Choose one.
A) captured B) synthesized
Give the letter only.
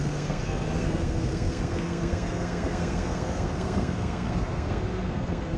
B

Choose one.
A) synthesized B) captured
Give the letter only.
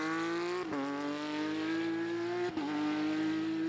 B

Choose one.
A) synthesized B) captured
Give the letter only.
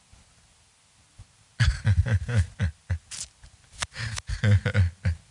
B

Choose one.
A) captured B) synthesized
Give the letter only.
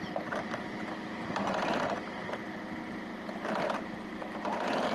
B